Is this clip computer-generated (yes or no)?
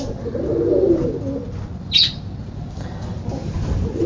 no